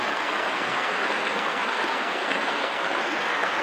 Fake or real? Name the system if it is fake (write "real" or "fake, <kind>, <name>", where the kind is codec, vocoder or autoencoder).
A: fake, codec, SNAC